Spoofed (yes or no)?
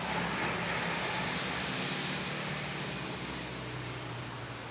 no